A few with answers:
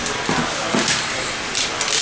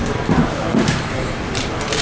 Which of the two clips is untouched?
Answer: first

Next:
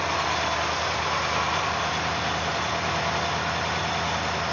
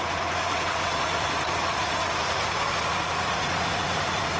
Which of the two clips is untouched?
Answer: first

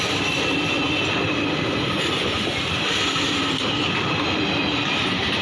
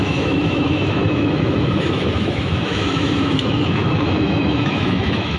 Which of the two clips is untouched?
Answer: first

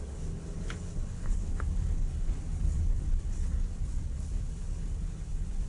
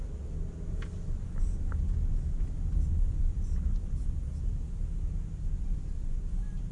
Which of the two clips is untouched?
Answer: second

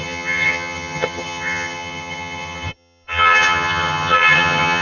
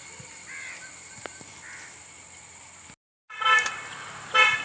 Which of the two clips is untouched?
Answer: second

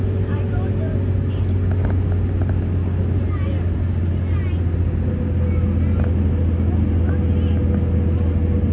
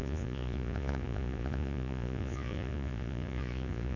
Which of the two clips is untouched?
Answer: first